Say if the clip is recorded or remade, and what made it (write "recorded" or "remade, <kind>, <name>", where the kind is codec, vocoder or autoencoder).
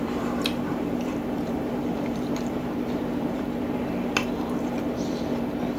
remade, vocoder, BigVGAN v2